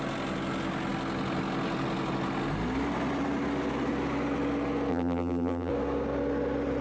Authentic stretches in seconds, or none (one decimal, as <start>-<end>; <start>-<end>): 0.0-4.9; 5.7-6.8